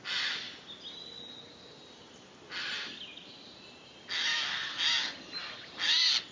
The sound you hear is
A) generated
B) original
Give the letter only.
B